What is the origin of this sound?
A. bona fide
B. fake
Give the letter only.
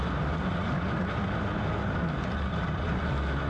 A